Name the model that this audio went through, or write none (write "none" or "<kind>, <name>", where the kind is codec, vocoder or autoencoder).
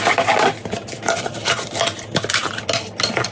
none